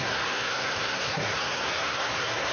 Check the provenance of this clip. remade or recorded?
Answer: remade